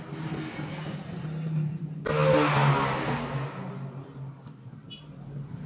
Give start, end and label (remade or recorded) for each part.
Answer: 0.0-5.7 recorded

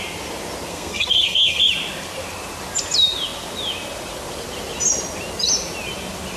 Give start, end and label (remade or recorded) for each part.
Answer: 0.0-0.7 recorded; 0.7-1.6 remade; 1.6-6.4 recorded

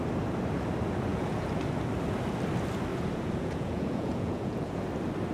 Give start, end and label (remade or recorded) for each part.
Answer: 0.0-1.1 recorded; 1.1-1.6 remade; 1.6-2.9 recorded; 2.9-4.8 remade; 4.8-5.3 recorded

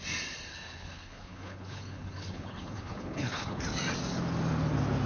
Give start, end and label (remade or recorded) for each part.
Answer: 0.0-0.5 recorded; 0.5-3.6 remade; 3.6-5.1 recorded

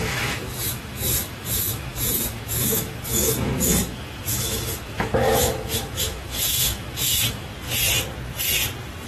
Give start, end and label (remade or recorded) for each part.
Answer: 0.0-7.5 remade; 7.5-9.1 recorded

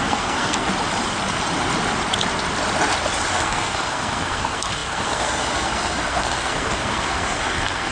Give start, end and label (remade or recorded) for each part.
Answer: 0.0-0.7 remade; 0.7-3.3 recorded; 3.3-7.9 remade

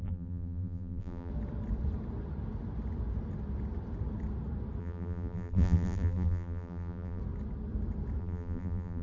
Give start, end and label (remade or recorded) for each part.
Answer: 0.0-1.3 remade; 1.3-4.8 recorded; 4.8-7.2 remade; 7.2-8.2 recorded; 8.2-9.0 remade